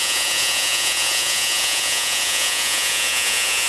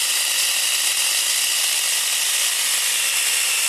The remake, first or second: first